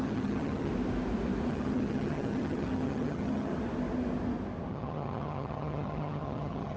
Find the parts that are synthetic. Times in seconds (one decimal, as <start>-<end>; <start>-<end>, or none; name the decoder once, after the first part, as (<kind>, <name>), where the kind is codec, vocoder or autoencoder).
0.0-0.7 (vocoder, HiFi-GAN); 1.5-3.5; 4.7-6.8